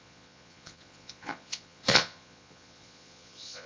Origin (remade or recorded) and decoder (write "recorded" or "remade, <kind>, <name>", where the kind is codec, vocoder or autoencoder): remade, vocoder, Vocos